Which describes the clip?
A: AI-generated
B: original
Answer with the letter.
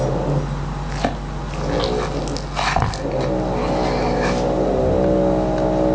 B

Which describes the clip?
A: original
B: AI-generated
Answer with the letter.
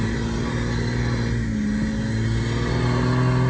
A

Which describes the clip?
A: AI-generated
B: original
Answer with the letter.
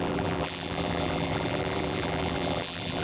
A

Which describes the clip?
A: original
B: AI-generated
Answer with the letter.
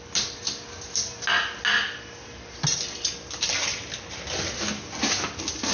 A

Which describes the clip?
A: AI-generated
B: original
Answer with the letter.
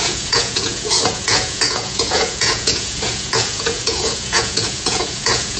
A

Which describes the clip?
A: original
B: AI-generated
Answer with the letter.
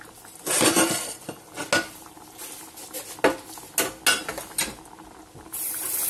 A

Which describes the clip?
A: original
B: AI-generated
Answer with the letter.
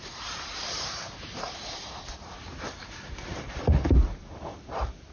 B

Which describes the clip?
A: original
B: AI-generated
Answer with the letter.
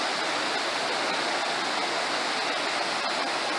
A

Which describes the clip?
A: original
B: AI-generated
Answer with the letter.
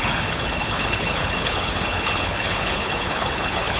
B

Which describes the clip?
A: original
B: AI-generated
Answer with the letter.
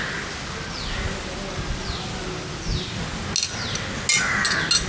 A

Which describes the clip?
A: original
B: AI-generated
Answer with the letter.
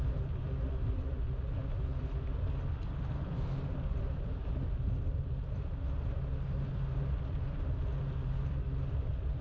B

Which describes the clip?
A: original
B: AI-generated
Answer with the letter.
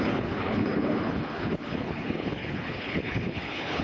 B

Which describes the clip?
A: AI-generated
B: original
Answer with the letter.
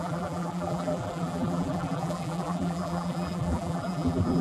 A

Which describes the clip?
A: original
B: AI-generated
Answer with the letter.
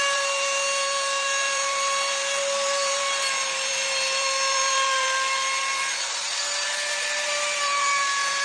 B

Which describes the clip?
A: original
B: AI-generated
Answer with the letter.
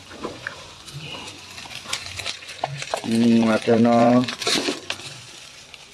B